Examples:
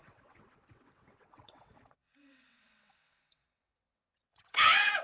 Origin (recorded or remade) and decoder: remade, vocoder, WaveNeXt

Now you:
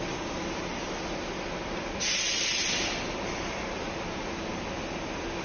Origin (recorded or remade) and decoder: recorded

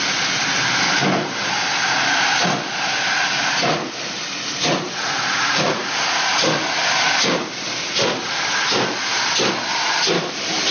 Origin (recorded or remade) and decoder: recorded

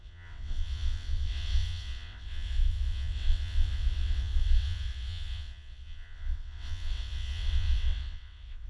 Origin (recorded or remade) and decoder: remade, vocoder, WaveNeXt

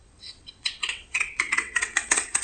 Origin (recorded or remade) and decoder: remade, vocoder, WaveNeXt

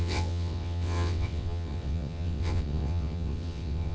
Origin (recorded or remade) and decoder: remade, vocoder, WaveNeXt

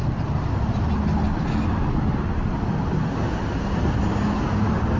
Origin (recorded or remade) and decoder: recorded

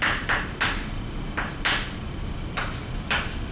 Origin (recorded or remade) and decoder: recorded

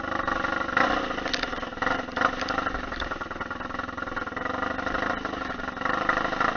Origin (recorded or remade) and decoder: recorded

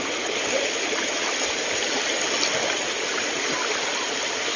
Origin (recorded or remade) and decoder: recorded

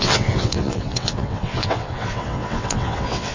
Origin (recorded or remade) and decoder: remade, vocoder, WaveNeXt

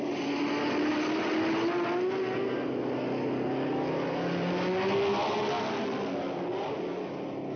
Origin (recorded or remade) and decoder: recorded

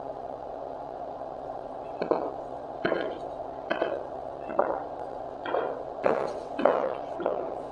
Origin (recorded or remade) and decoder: remade, vocoder, WaveNeXt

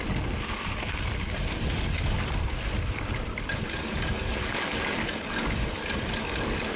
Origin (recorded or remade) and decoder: recorded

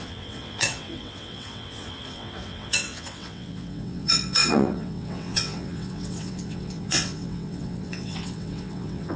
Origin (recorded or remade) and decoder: remade, vocoder, WaveNeXt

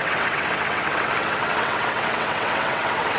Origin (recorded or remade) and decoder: remade, vocoder, WaveNeXt